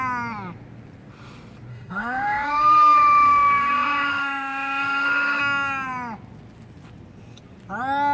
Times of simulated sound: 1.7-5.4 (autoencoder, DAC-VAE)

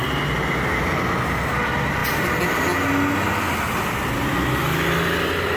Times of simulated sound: none

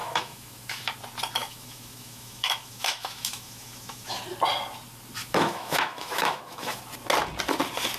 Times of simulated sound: 0.0-0.8 (autoencoder, DAC-VAE); 1.4-4.2; 5.2-6.8

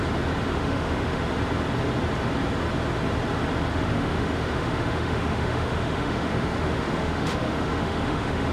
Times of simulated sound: 0.5-1.2 (autoencoder, DAC-VAE); 3.7-8.5

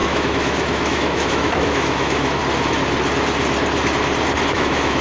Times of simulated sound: 0.0-2.4 (autoencoder, DAC-VAE); 4.5-5.0